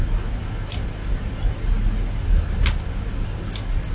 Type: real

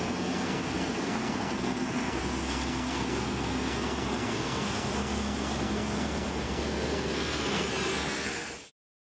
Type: fake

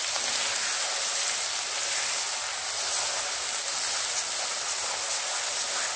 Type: real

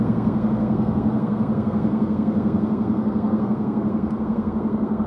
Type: fake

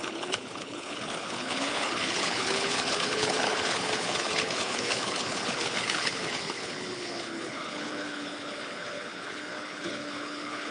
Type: fake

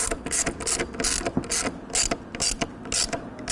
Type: real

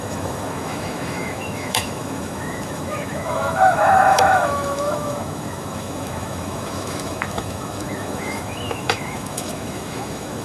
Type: fake